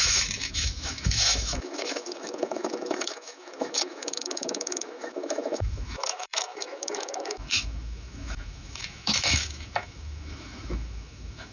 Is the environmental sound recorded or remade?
remade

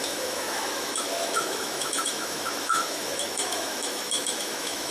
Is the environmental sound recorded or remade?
remade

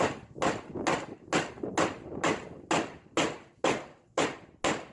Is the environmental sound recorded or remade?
recorded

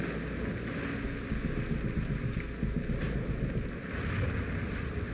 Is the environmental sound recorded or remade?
recorded